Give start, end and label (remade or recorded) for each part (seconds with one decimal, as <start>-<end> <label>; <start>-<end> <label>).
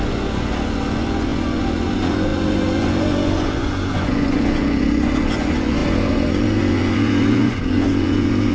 0.0-8.5 remade